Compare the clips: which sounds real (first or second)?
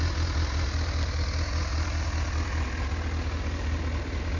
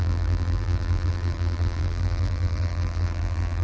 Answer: first